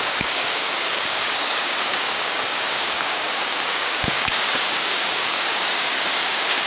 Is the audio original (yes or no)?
no